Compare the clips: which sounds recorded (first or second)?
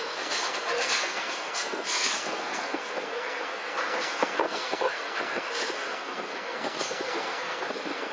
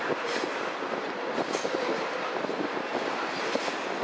second